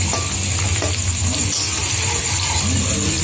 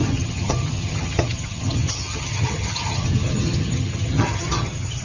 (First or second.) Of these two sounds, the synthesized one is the second